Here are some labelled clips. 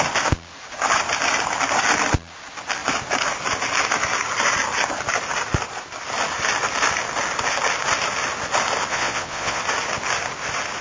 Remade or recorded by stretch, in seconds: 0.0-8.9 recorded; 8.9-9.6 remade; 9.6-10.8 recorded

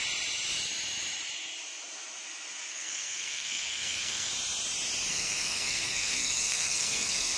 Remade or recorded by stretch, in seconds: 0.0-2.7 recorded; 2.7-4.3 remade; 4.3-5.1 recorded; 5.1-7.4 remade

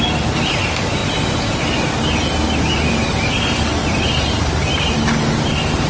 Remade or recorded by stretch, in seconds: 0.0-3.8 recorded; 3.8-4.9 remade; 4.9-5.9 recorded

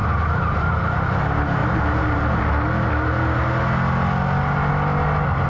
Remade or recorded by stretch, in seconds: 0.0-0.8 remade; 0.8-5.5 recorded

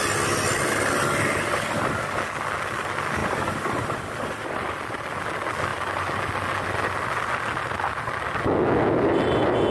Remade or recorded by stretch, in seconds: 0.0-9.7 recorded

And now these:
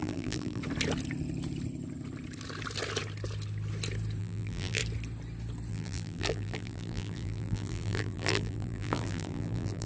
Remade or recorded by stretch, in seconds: 0.0-0.6 remade; 0.6-4.2 recorded; 4.2-4.8 remade; 4.8-5.7 recorded; 5.7-9.9 remade